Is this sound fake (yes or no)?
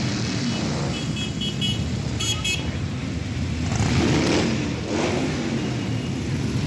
no